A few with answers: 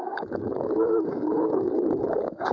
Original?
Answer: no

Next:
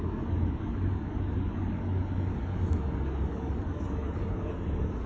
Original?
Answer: no